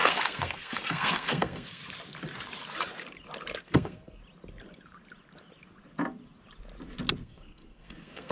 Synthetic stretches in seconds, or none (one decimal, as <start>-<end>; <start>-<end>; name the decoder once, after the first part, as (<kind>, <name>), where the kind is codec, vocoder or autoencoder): 0.0-1.8 (codec, SNAC); 3.6-4.2; 7.2-8.3